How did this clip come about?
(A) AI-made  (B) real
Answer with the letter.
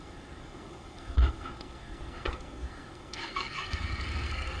A